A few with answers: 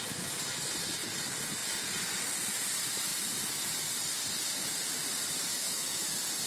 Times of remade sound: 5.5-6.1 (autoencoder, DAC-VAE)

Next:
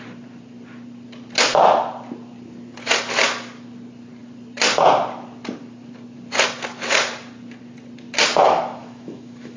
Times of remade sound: 8.4-9.6 (autoencoder, DAC-VAE)

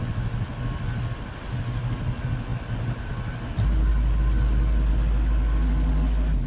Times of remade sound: none

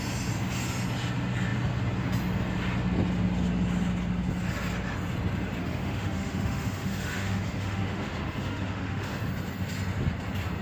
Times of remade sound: 5.6-9.3 (autoencoder, DAC-VAE)

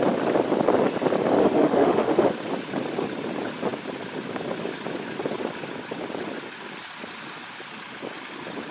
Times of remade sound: 1.4-2.3 (autoencoder, DAC-VAE)

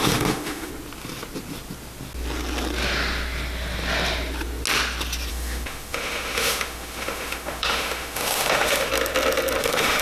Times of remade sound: 0.0-0.7 (autoencoder, DAC-VAE); 5.3-8.9; 9.6-10.0

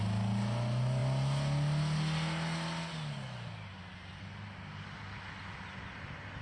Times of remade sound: none